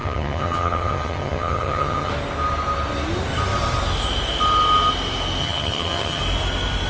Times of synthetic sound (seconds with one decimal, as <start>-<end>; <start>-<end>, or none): 0.0-2.1; 5.4-6.2